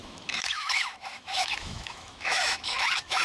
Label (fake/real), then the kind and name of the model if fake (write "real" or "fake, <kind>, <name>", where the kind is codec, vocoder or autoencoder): fake, autoencoder, DAC-VAE